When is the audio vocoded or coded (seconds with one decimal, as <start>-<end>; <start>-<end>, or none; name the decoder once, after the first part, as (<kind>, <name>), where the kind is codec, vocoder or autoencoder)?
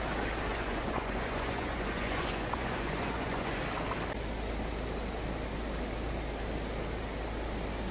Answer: 0.5-3.6 (vocoder, Vocos)